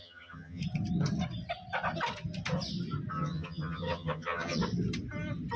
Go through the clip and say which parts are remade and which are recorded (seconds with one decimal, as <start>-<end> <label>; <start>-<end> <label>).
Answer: 0.0-0.6 remade; 0.6-3.1 recorded; 3.1-4.6 remade; 4.6-5.6 recorded

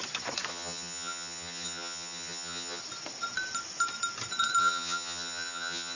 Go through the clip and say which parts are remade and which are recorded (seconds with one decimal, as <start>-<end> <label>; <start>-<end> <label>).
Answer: 0.0-0.5 recorded; 0.5-2.8 remade; 2.8-4.6 recorded; 4.6-6.0 remade

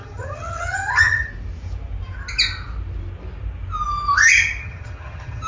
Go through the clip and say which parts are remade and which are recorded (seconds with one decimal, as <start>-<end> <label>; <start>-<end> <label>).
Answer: 0.0-1.3 remade; 1.3-4.6 recorded; 4.6-5.5 remade

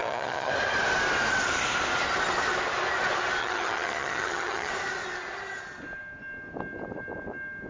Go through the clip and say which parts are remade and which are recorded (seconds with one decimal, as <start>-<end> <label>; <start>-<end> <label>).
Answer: 0.0-0.5 remade; 0.5-3.4 recorded; 3.4-4.7 remade; 4.7-7.7 recorded